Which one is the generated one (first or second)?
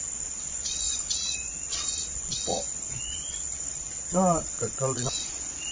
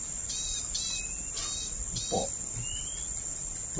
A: first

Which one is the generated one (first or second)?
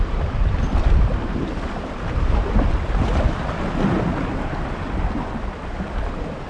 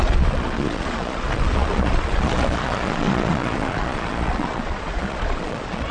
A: second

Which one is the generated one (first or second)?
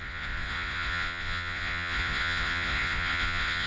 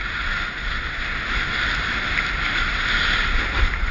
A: first